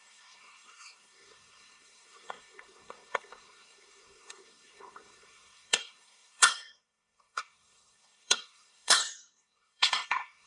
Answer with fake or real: fake